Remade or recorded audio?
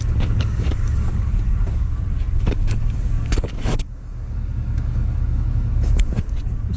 remade